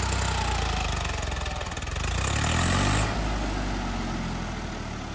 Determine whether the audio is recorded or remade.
recorded